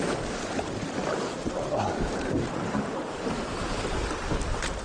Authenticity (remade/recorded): recorded